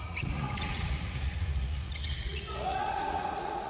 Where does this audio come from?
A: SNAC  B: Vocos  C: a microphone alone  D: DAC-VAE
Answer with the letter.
B